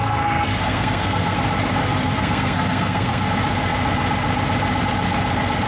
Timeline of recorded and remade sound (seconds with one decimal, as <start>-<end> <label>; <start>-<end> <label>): 0.0-1.4 remade; 1.4-1.8 recorded; 1.8-3.3 remade; 3.3-5.7 recorded